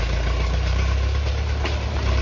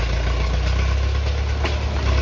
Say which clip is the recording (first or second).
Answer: second